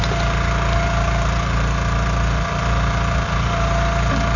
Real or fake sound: real